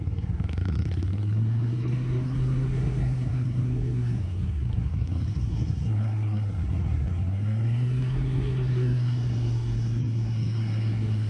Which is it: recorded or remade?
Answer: remade